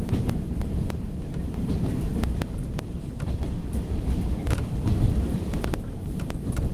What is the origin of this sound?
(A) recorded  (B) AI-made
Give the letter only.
B